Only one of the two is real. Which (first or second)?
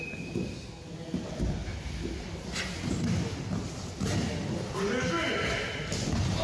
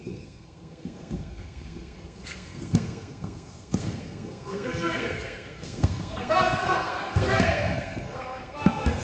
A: first